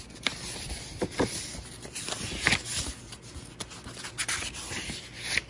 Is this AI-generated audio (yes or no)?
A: no